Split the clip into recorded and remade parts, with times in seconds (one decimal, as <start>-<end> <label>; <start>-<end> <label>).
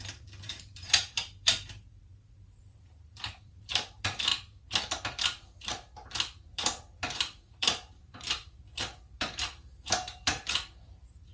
0.0-4.3 remade; 4.3-6.4 recorded; 6.4-11.3 remade